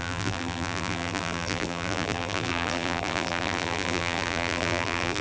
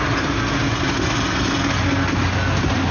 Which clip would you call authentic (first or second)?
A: second